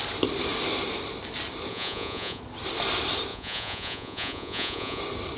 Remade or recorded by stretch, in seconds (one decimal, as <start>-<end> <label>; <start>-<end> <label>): 0.0-1.7 recorded; 1.7-2.4 remade; 2.4-3.3 recorded; 3.3-5.0 remade; 5.0-5.4 recorded